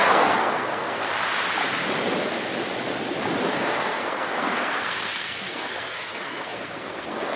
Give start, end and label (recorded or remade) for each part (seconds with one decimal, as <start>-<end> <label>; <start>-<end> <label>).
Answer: 0.0-1.1 remade; 1.1-3.5 recorded; 3.5-7.4 remade